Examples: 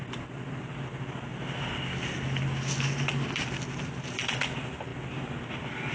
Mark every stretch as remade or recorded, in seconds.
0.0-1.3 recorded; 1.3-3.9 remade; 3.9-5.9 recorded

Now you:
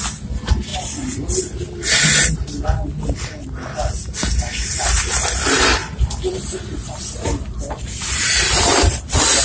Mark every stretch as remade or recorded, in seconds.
0.0-5.8 recorded; 5.8-9.0 remade; 9.0-9.4 recorded

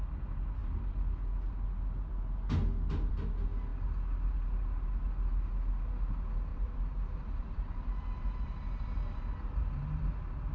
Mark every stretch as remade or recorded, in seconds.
0.0-6.5 recorded; 6.5-9.2 remade; 9.2-10.5 recorded

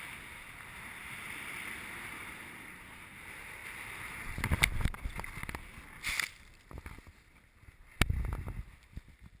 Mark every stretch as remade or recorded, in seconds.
0.0-9.4 recorded

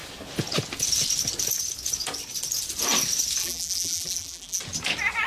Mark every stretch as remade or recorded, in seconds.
0.0-3.4 recorded; 3.4-4.6 remade; 4.6-5.3 recorded

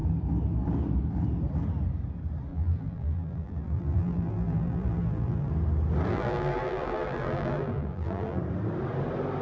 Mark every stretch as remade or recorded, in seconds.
0.0-2.5 recorded; 2.5-5.5 remade; 5.5-6.1 recorded; 6.1-8.4 remade; 8.4-9.4 recorded

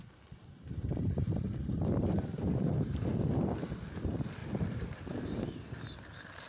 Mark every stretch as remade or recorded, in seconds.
0.0-0.4 recorded; 0.4-3.0 remade; 3.0-4.4 recorded; 4.4-5.4 remade; 5.4-6.5 recorded

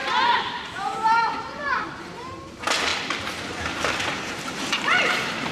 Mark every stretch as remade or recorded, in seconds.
0.0-2.9 remade; 2.9-3.5 recorded; 3.5-5.5 remade